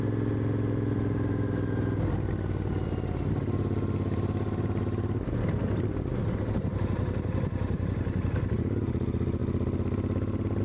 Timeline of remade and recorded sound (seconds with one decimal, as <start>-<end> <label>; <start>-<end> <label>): 0.0-10.6 recorded